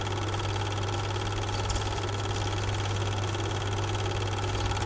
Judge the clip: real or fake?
real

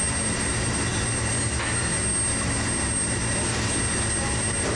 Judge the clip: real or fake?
real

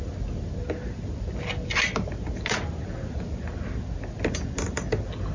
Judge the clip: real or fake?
real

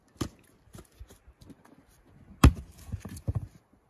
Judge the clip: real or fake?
real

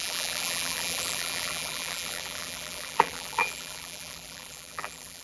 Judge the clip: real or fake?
fake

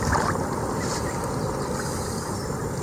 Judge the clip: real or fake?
fake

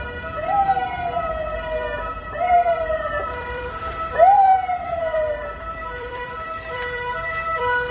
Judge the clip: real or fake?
fake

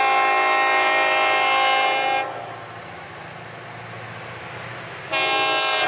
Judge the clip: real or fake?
real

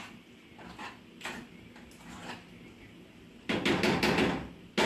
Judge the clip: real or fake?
real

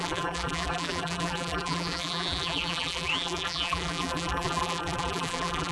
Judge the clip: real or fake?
fake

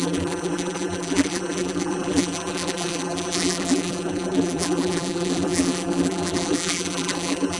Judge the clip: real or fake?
fake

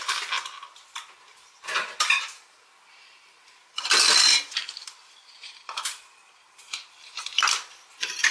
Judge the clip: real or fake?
fake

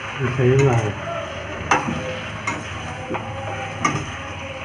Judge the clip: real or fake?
real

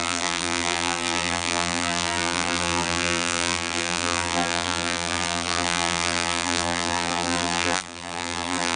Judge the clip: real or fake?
fake